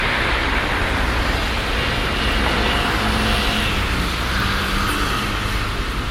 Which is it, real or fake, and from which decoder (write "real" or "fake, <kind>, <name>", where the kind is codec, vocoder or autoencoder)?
real